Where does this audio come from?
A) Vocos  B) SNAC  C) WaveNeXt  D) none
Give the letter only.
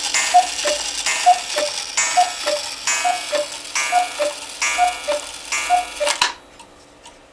D